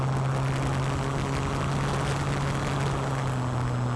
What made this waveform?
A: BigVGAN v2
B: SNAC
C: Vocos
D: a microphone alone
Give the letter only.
D